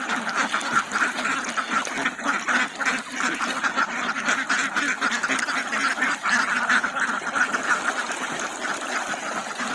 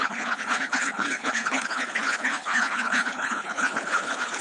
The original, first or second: first